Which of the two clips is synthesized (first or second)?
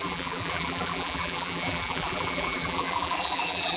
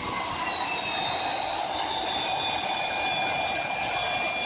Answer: first